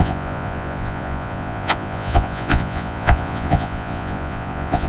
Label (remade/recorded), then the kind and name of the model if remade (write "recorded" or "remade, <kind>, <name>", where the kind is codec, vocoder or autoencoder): remade, vocoder, Vocos